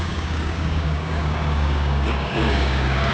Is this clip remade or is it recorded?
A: remade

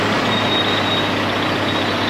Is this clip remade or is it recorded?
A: recorded